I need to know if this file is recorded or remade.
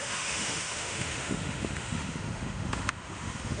remade